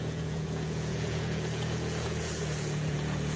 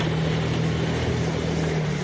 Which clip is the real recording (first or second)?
second